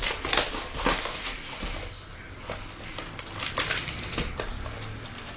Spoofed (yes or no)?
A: no